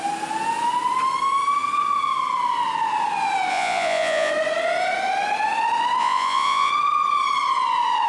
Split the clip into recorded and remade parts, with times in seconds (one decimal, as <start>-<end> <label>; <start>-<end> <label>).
0.0-3.5 recorded; 3.5-4.3 remade; 4.3-6.0 recorded; 6.0-6.7 remade; 6.7-8.1 recorded